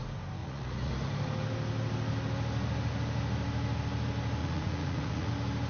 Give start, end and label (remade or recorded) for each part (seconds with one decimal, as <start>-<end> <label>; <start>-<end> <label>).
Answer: 0.0-0.4 recorded; 0.4-0.9 remade; 0.9-4.4 recorded; 4.4-5.3 remade; 5.3-5.7 recorded